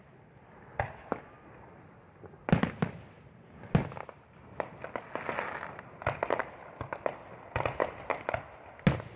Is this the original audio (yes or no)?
yes